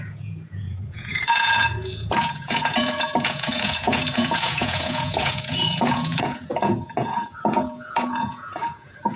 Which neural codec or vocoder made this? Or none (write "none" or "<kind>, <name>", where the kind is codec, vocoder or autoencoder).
vocoder, Vocos